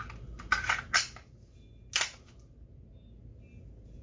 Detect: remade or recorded recorded